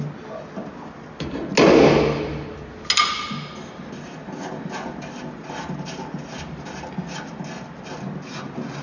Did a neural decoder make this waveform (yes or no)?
no